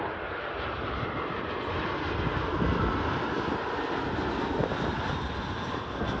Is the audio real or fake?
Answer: real